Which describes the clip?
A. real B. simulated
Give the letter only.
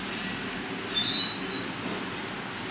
A